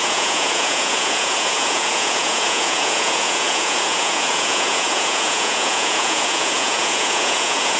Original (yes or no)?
no